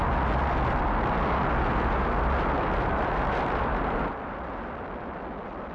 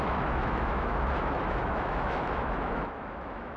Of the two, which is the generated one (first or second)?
second